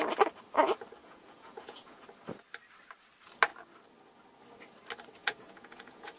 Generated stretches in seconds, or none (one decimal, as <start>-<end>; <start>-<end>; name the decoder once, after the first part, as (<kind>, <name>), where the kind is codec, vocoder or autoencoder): 1.0-2.0 (vocoder, Vocos); 5.2-6.2